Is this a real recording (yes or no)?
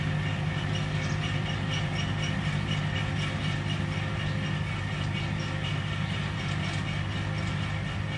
yes